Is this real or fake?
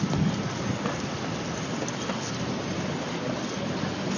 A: real